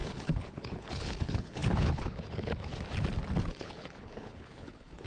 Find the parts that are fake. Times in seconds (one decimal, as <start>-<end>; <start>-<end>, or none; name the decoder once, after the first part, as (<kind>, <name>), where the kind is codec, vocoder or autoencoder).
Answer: 0.0-2.7 (codec, HILCodec); 3.4-5.1